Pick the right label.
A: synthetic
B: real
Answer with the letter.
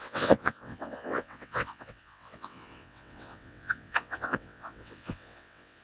A